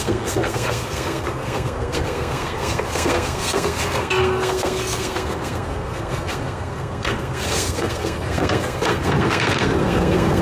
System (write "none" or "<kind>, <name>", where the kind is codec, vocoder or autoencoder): codec, SNAC